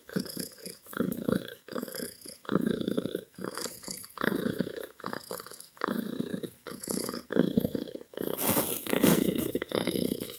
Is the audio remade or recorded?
remade